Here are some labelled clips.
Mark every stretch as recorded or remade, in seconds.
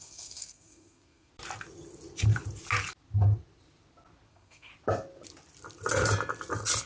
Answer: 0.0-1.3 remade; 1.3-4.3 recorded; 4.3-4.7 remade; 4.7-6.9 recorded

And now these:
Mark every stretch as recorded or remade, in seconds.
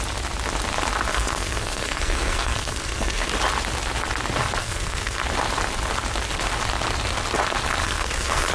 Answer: 0.0-1.1 recorded; 1.1-3.3 remade; 3.3-4.6 recorded; 4.6-5.2 remade; 5.2-7.8 recorded; 7.8-8.5 remade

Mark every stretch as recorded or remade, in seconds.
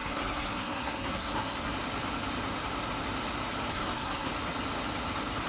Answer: 0.0-1.7 remade; 1.7-3.7 recorded; 3.7-4.3 remade; 4.3-5.5 recorded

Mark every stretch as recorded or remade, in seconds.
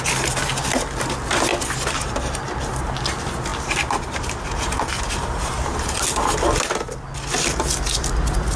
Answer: 0.0-8.6 recorded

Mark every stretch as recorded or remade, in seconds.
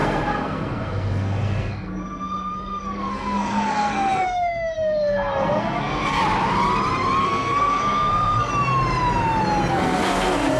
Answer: 0.0-6.2 remade; 6.2-7.2 recorded; 7.2-8.5 remade; 8.5-9.7 recorded; 9.7-10.6 remade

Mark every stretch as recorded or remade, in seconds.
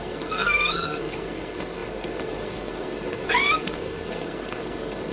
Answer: 0.0-5.1 remade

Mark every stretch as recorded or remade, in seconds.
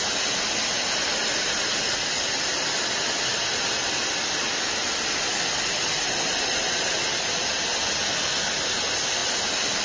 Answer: 0.0-9.8 recorded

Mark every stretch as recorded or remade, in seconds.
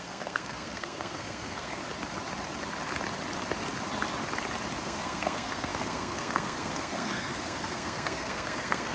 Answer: 0.0-1.8 remade; 1.8-4.8 recorded; 4.8-8.9 remade